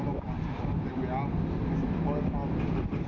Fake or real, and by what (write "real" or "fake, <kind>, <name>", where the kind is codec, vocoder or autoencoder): real